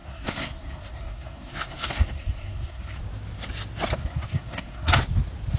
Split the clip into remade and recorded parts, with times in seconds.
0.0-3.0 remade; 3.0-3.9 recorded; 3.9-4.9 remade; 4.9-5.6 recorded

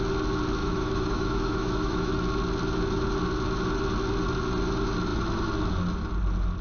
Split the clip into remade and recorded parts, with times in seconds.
0.0-0.6 recorded; 0.6-2.1 remade; 2.1-6.6 recorded